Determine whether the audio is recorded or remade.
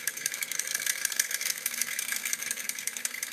remade